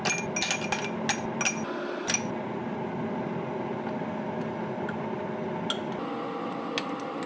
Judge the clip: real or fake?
real